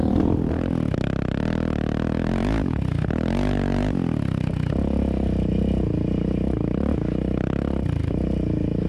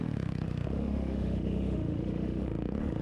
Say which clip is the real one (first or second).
first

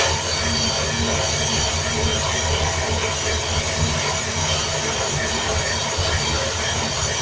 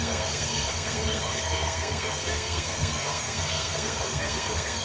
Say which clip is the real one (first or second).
first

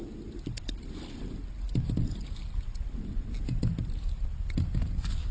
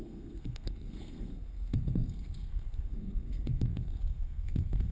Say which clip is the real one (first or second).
first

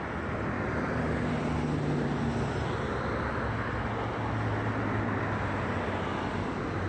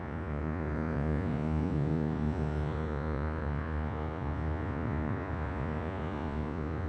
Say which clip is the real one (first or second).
first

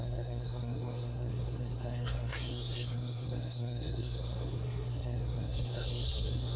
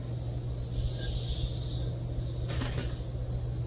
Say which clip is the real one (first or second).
second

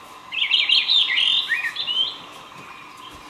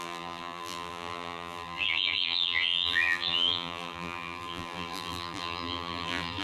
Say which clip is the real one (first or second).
first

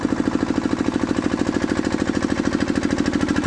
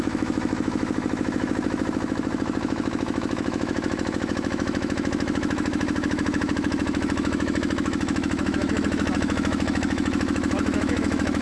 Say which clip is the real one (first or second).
first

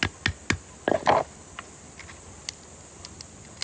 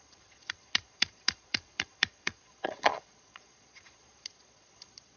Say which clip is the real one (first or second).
first